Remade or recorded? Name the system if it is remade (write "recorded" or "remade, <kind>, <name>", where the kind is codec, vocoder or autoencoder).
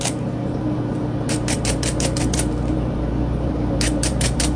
remade, vocoder, BigVGAN v2